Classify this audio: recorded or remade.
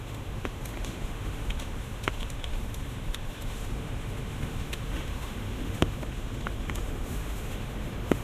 remade